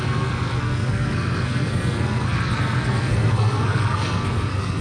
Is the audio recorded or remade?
remade